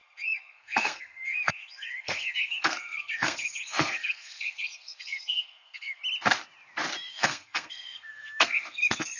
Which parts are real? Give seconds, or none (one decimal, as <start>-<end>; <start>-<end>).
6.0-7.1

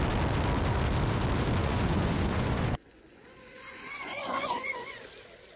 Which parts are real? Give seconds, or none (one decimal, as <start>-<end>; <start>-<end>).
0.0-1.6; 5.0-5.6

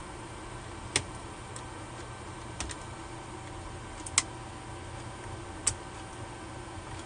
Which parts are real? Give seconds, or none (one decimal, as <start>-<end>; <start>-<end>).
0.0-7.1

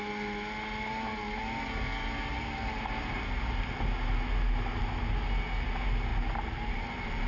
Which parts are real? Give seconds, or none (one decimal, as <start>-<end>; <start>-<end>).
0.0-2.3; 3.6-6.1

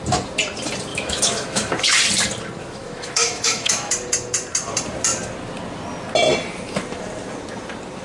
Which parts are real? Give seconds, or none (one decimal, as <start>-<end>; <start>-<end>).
0.0-0.9; 1.8-2.6; 3.9-8.0

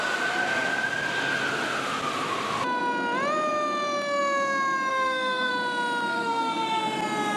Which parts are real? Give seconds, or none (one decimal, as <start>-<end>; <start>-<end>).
0.0-4.9; 5.5-6.1; 6.8-7.4

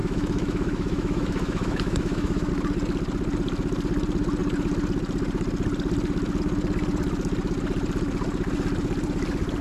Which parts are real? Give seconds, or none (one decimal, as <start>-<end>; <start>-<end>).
2.5-9.6

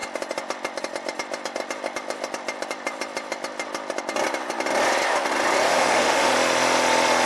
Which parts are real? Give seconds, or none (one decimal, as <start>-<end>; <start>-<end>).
0.0-5.7; 6.3-7.3